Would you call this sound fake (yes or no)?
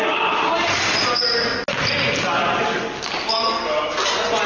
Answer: no